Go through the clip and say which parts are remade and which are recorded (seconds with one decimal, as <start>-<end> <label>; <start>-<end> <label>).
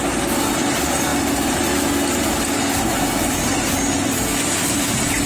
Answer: 0.0-5.3 recorded